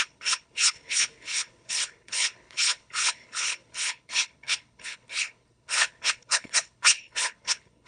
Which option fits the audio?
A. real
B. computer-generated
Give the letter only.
B